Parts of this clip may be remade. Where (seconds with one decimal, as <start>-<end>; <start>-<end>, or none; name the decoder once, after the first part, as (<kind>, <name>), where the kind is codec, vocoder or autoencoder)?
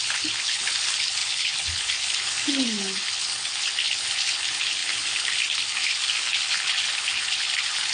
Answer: 0.0-7.9 (codec, HILCodec)